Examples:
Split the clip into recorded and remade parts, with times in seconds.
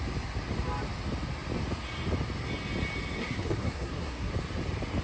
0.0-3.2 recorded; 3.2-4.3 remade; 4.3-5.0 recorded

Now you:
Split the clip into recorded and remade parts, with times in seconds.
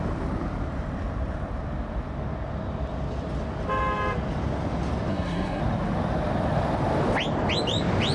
0.0-5.1 recorded; 5.1-5.6 remade; 5.6-8.1 recorded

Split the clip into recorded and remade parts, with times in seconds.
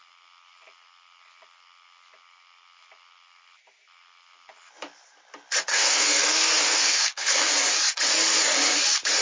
0.0-5.7 recorded; 5.7-7.5 remade; 7.5-9.2 recorded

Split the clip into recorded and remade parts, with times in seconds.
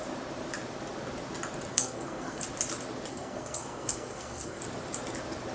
0.0-1.7 recorded; 1.7-2.4 remade; 2.4-3.1 recorded; 3.1-4.6 remade; 4.6-5.5 recorded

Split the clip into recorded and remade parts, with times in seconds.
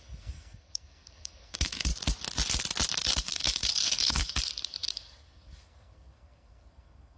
0.0-1.9 remade; 1.9-3.0 recorded; 3.0-7.2 remade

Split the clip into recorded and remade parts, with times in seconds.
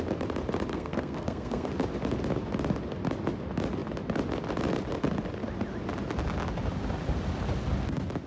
0.0-0.7 recorded; 0.7-1.7 remade; 1.7-8.3 recorded